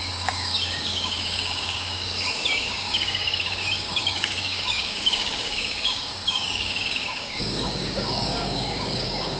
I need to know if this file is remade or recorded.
remade